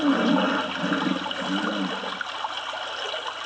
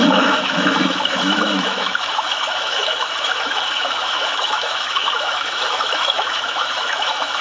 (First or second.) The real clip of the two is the first